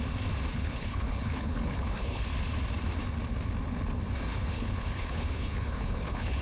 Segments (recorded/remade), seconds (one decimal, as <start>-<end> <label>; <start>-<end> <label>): 0.0-0.5 recorded; 0.5-2.2 remade; 2.2-4.3 recorded; 4.3-6.4 remade

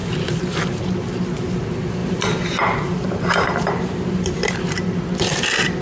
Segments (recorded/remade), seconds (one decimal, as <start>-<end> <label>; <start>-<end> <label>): 0.0-0.8 remade; 0.8-2.0 recorded; 2.0-4.5 remade; 4.5-5.8 recorded